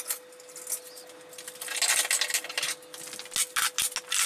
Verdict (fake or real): real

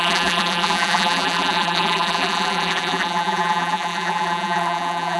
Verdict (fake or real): fake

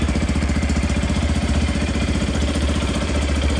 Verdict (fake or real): fake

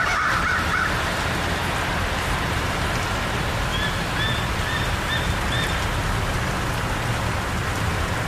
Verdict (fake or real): real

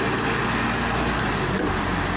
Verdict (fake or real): real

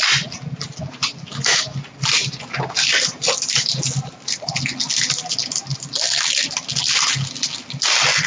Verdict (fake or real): real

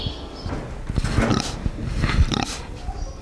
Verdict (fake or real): real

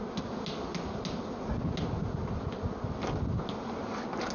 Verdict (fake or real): real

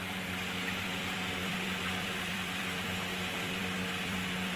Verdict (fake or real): fake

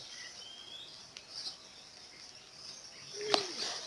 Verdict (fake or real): fake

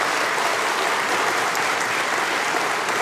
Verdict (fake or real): real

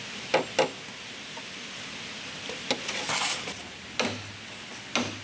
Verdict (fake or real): real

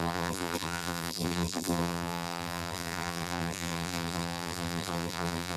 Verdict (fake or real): fake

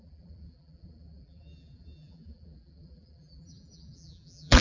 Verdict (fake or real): fake